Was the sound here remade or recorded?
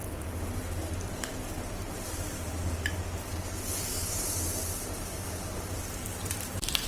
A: remade